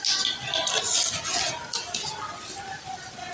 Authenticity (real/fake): real